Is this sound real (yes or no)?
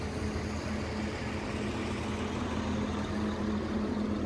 yes